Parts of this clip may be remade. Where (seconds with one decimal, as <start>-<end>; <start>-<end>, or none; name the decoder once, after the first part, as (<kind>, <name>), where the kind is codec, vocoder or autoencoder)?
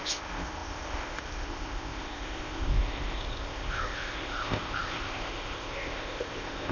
0.0-6.7 (codec, ZipCodec)